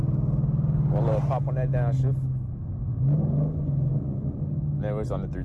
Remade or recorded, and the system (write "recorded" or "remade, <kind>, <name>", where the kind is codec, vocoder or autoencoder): recorded